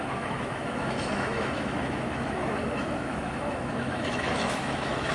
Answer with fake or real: fake